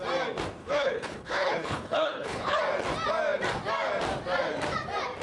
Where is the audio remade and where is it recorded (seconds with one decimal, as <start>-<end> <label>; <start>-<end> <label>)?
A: 0.0-0.6 recorded; 0.6-2.6 remade; 2.6-5.2 recorded